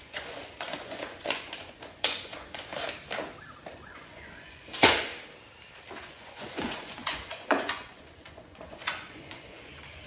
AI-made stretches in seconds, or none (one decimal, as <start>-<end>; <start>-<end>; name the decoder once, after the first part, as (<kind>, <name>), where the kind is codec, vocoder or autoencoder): 0.0-2.7 (vocoder, Vocos); 3.7-5.1; 6.0-10.1